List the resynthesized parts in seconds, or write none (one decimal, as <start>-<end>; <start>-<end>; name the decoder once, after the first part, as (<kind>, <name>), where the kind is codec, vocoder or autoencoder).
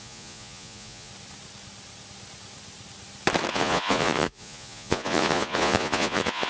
0.0-1.1 (vocoder, Vocos); 3.5-6.5